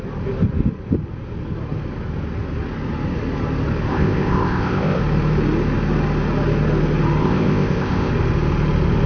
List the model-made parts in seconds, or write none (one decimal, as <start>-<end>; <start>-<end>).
3.9-5.0; 7.2-8.1